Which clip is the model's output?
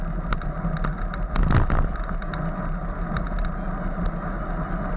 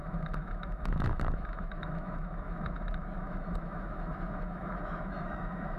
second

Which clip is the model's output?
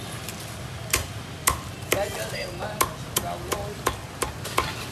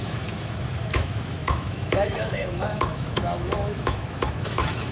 second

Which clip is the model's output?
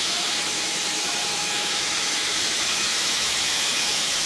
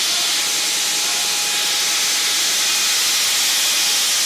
first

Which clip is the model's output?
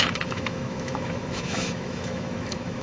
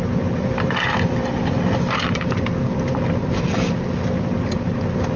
first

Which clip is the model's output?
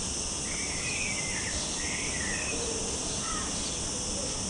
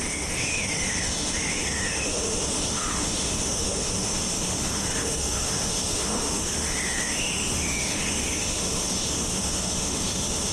second